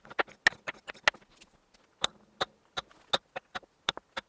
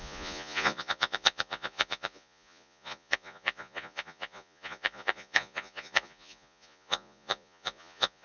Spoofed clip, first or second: second